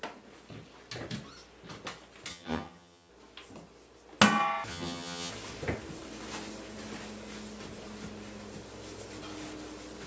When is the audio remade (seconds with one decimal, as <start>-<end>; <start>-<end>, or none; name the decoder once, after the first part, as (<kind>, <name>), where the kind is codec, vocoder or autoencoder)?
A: 2.3-3.1 (vocoder, HiFi-GAN); 4.7-5.3